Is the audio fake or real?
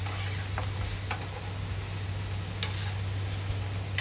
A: real